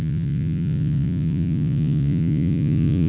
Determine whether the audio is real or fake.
fake